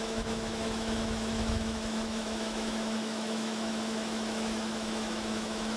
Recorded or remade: remade